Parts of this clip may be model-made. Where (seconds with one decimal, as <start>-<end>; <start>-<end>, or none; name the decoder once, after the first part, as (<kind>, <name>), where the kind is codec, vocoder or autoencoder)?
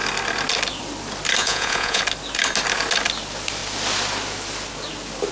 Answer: 1.4-2.0 (vocoder, Vocos)